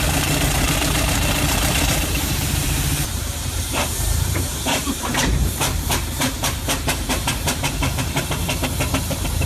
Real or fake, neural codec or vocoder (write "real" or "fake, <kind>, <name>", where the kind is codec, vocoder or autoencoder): fake, vocoder, BigVGAN v2